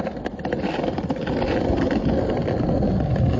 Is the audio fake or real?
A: real